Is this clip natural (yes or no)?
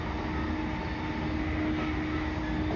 yes